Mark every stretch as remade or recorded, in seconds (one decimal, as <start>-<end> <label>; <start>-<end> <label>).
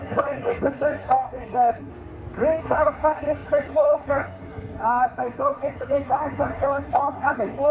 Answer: 0.0-1.9 remade; 1.9-2.6 recorded; 2.6-7.7 remade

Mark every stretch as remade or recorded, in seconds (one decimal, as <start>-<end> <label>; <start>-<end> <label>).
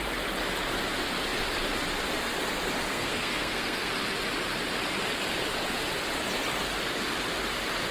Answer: 0.0-2.9 recorded; 2.9-3.9 remade; 3.9-7.9 recorded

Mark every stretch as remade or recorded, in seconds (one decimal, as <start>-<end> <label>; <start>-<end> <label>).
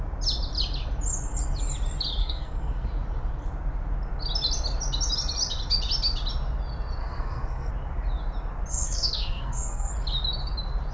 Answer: 0.0-2.2 recorded; 2.2-2.9 remade; 2.9-7.0 recorded; 7.0-7.7 remade; 7.7-8.7 recorded; 8.7-9.9 remade; 9.9-10.9 recorded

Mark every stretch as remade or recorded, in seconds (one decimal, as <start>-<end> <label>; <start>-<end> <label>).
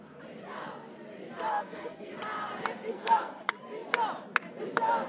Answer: 0.0-1.5 recorded; 1.5-2.1 remade; 2.1-2.9 recorded; 2.9-3.4 remade; 3.4-5.1 recorded